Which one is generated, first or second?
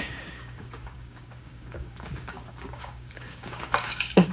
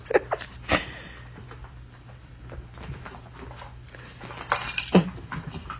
first